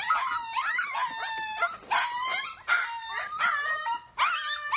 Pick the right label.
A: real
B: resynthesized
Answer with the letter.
A